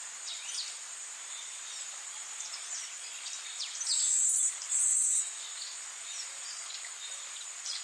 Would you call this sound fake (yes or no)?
yes